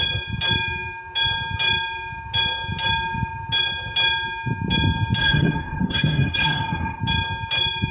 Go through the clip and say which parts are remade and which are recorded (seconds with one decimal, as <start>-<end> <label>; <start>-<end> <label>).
0.0-5.2 recorded; 5.2-7.0 remade; 7.0-7.9 recorded